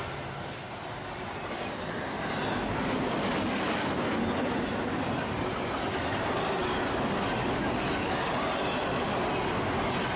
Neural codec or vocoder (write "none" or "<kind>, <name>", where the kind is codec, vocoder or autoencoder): none